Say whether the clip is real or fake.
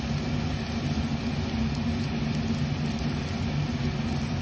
real